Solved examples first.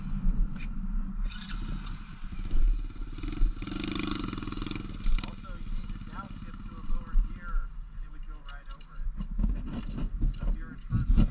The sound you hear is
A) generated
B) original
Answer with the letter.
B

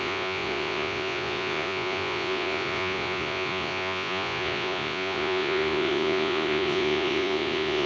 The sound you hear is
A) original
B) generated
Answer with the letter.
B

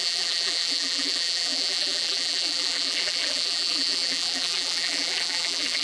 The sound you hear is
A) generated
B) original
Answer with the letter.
A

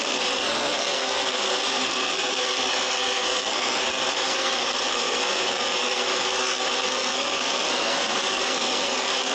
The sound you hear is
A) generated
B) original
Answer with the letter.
A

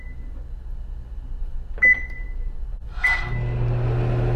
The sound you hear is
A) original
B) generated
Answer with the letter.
A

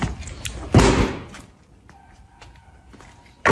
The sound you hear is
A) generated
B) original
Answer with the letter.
B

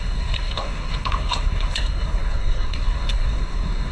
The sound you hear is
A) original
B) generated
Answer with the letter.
B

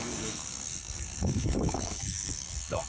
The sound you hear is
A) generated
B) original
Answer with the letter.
A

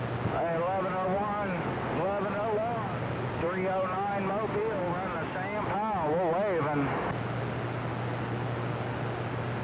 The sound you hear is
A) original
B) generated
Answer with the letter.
A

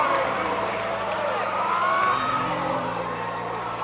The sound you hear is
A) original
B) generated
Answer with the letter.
B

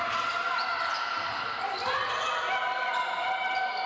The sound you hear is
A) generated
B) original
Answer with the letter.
B